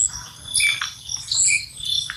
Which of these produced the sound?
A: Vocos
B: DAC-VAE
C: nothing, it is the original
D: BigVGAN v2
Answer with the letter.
C